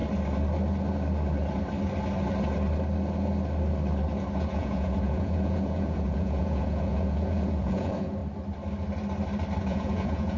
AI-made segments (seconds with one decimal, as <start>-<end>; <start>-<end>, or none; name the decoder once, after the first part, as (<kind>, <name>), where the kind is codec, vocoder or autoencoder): 4.4-8.2 (vocoder, Vocos); 9.6-10.4